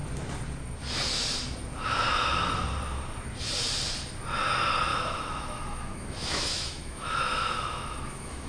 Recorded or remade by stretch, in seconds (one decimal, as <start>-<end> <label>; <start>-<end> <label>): 0.0-4.9 recorded; 4.9-8.5 remade